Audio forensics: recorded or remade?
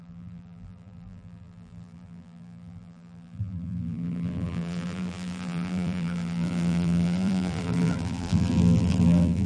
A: remade